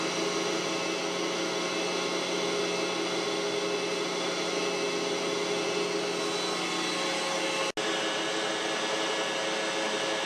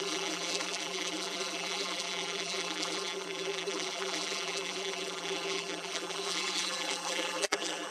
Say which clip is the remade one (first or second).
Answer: second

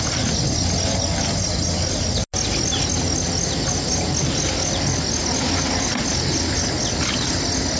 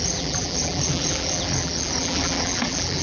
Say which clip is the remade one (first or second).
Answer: second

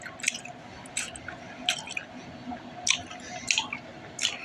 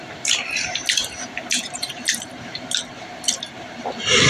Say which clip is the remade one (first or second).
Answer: second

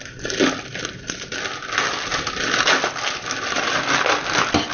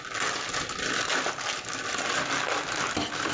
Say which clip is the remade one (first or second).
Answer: second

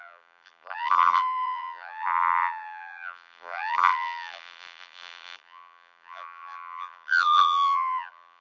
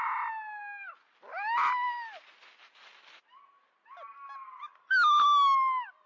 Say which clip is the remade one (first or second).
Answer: first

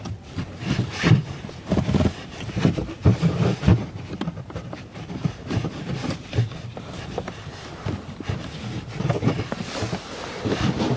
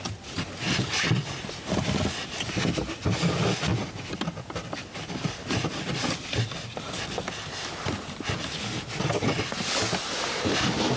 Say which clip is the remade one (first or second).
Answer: first